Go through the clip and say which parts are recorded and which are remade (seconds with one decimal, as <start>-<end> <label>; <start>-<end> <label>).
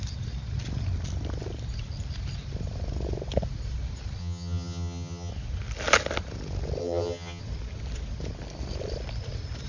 0.0-4.2 recorded; 4.2-5.3 remade; 5.3-6.8 recorded; 6.8-7.4 remade; 7.4-9.7 recorded